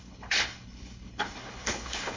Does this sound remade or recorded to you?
remade